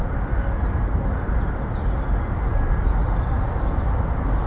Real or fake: real